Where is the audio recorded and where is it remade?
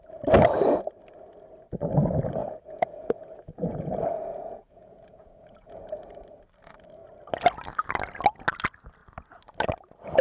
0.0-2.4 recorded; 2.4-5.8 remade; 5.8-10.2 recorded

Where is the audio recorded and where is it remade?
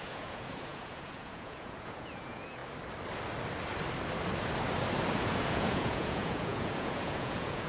0.0-2.6 remade; 2.6-5.1 recorded; 5.1-7.7 remade